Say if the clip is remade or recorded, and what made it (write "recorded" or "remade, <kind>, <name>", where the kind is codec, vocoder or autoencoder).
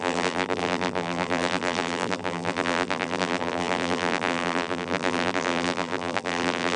remade, vocoder, BigVGAN v2